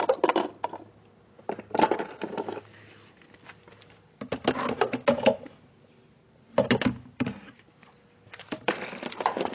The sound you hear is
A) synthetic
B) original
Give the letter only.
B